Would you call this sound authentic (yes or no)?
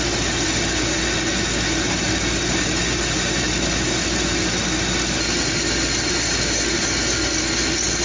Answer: yes